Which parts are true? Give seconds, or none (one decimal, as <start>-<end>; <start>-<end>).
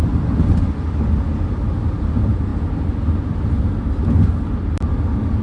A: 0.0-5.4